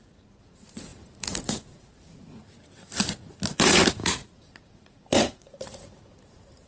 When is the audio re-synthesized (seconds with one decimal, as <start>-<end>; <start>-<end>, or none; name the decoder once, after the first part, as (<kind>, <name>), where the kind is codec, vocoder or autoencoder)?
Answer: 0.0-2.4 (vocoder, Vocos); 3.5-6.7

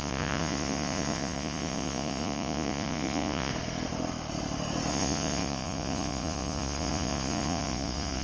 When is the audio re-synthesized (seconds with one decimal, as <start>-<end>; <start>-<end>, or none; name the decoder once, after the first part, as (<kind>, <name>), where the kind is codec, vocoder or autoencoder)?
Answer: 0.0-3.5 (vocoder, Vocos); 4.9-8.2

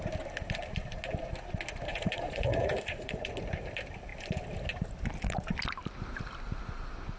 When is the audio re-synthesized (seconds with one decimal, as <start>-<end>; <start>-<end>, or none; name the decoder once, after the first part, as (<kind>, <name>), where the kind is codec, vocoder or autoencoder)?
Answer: 1.9-3.3 (vocoder, Vocos)

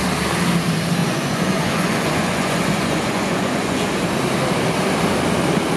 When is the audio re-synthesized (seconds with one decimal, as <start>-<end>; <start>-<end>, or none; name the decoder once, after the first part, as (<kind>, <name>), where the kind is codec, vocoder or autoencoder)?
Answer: 1.0-3.9 (vocoder, Vocos)

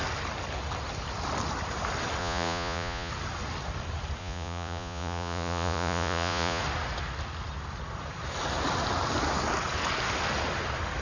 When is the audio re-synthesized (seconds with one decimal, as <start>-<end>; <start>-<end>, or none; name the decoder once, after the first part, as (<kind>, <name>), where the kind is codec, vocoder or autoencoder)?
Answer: 2.2-3.1 (vocoder, Vocos); 4.2-6.6

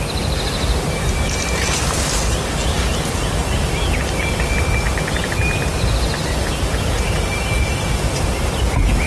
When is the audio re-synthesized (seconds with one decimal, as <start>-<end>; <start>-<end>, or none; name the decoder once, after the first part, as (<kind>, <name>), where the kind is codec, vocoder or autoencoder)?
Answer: none

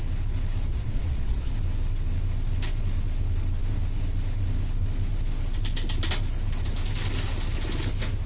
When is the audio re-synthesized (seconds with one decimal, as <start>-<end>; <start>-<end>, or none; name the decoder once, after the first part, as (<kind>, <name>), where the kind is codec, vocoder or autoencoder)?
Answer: 0.7-1.5 (vocoder, Vocos)

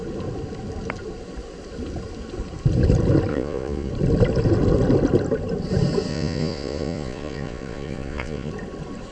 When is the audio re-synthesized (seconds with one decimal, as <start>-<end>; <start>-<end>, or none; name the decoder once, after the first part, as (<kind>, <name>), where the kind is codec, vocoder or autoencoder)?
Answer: 3.3-3.9 (vocoder, Vocos); 6.1-8.5